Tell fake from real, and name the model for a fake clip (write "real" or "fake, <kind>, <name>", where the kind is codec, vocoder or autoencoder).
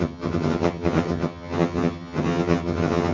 fake, vocoder, HiFi-GAN